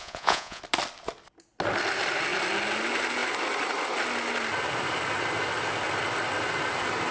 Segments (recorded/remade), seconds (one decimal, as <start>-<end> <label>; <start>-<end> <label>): 0.0-0.6 remade; 0.6-7.1 recorded